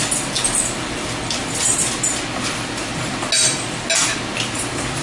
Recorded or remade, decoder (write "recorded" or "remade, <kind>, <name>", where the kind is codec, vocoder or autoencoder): recorded